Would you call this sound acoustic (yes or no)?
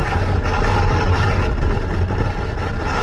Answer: yes